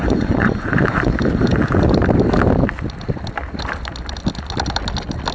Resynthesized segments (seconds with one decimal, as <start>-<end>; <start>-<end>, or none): 0.0-1.2